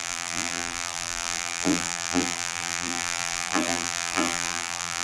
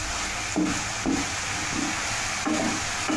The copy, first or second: first